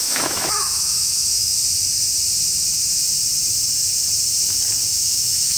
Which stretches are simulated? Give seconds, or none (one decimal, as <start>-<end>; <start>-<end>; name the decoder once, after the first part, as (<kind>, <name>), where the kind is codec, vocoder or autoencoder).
0.0-1.5 (autoencoder, DAC-VAE); 4.9-5.6